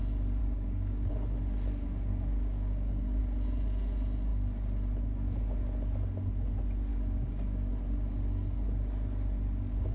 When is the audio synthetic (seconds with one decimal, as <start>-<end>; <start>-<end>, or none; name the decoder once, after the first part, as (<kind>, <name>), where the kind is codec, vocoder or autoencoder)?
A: 0.4-1.1 (codec, DAC); 2.1-3.2; 6.9-7.7